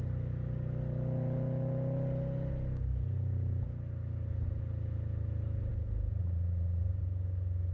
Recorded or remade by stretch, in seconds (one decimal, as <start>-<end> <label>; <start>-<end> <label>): 0.0-6.2 recorded; 6.2-6.8 remade; 6.8-7.7 recorded